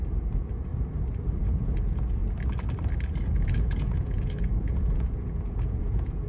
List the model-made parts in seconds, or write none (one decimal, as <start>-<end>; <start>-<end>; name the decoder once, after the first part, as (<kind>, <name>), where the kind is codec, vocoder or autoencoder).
0.0-0.7 (vocoder, Vocos); 1.4-2.2; 3.2-6.3